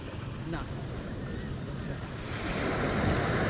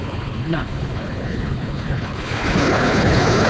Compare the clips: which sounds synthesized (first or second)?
second